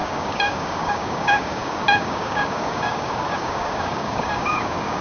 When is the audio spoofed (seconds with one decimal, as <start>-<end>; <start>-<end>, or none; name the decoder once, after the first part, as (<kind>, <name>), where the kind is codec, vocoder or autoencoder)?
0.0-5.0 (codec, DAC)